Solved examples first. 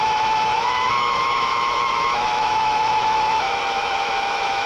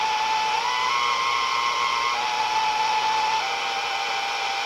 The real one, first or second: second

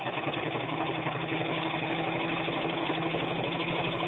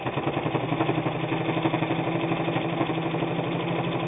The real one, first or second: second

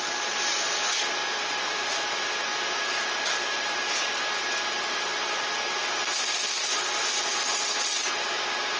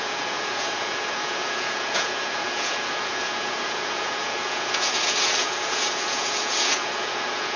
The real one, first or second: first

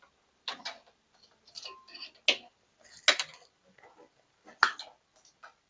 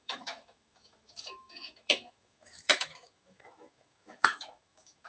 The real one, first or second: first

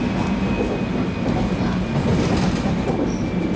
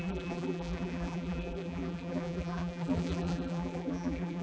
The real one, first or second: first